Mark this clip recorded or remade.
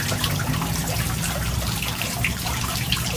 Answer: remade